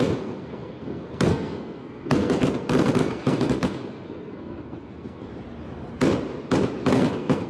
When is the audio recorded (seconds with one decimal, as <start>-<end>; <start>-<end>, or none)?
5.3-6.9